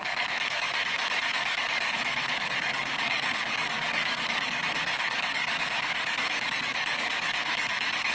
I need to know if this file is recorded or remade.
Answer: remade